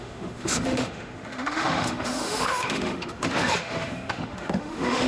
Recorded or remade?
remade